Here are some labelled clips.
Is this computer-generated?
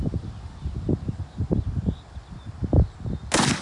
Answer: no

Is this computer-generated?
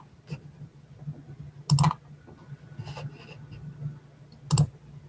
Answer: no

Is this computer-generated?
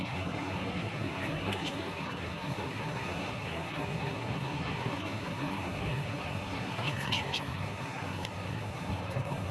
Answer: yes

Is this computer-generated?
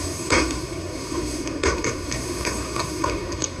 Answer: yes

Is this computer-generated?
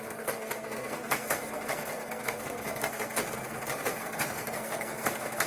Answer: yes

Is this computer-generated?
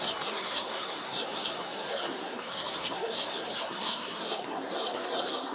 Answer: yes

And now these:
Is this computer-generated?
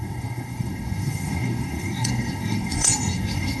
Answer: yes